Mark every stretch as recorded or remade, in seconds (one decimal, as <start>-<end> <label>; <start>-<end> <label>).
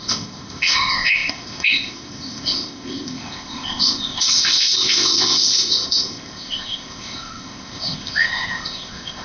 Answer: 0.0-9.2 remade